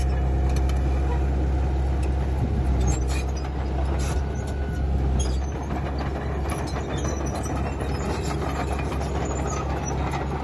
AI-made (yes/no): no